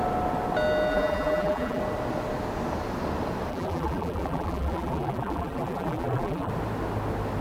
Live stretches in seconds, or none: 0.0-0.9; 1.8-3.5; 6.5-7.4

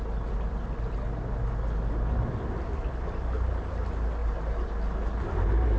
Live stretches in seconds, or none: 0.0-4.2; 4.7-5.8